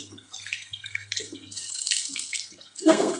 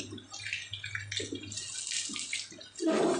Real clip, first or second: second